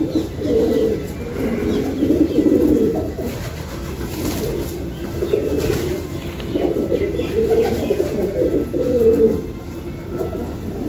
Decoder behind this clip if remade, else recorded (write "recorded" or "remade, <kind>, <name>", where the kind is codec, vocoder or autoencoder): recorded